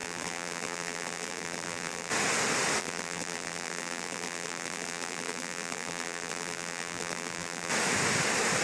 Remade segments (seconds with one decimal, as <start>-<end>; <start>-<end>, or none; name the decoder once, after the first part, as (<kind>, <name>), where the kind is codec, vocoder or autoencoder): 0.0-2.1 (vocoder, BigVGAN v2); 2.8-7.7